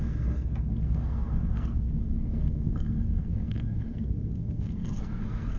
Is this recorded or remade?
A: remade